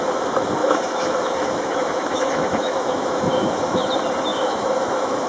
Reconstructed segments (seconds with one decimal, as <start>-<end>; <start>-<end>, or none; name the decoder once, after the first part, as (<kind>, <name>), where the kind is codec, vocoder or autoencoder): 0.6-3.8 (autoencoder, DAC-VAE); 4.3-5.3